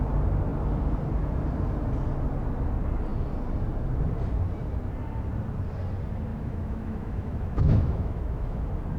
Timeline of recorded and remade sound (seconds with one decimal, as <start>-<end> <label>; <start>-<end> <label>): 0.0-6.3 recorded; 6.3-8.6 remade; 8.6-9.0 recorded